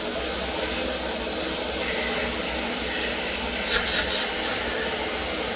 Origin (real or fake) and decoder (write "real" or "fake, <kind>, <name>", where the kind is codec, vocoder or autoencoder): real